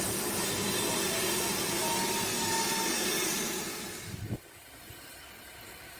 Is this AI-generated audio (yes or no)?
no